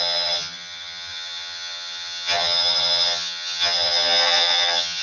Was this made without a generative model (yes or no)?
no